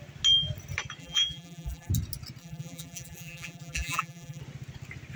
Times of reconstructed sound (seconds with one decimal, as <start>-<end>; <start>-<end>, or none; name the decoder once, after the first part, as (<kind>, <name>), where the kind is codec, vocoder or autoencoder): 1.0-1.9 (vocoder, BigVGAN v2); 2.4-4.4